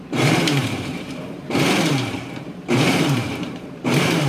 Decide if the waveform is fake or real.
fake